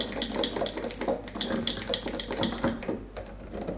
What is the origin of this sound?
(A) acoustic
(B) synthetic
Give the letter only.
A